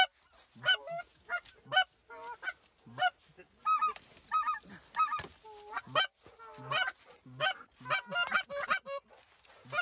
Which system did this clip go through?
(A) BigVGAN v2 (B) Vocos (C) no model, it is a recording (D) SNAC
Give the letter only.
C